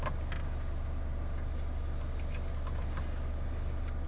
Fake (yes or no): no